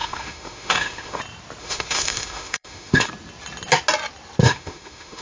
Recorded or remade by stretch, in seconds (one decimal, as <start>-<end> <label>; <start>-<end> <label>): 0.0-1.2 remade; 1.2-1.6 recorded; 1.6-3.1 remade; 3.1-4.4 recorded; 4.4-5.2 remade